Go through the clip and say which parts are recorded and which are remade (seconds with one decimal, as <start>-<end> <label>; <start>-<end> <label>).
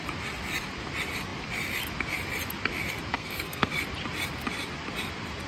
0.0-3.1 recorded; 3.1-3.7 remade; 3.7-5.5 recorded